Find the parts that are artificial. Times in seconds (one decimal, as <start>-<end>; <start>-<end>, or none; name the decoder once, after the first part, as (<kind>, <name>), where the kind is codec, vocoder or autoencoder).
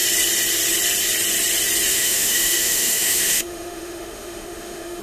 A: 1.9-5.0 (autoencoder, DAC-VAE)